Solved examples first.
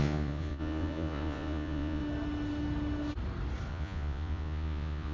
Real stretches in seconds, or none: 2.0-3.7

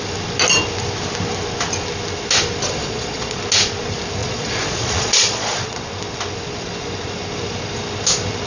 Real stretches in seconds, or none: 0.0-2.8; 3.4-4.2; 5.8-8.5

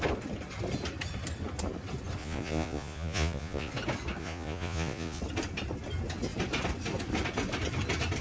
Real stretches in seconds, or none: 0.0-2.2; 3.7-4.2; 5.2-8.2

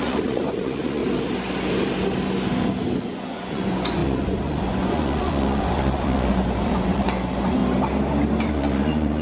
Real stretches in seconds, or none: 1.0-3.0; 7.6-8.5

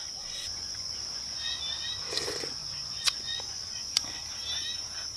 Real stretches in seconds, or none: 1.5-2.1; 4.2-5.2